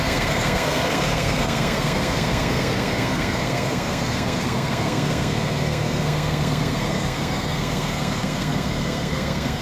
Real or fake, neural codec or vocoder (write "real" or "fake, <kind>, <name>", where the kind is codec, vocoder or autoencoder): fake, codec, SNAC